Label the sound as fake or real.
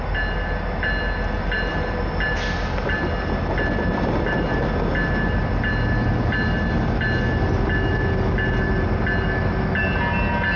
real